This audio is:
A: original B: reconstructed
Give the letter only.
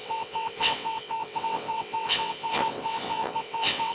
B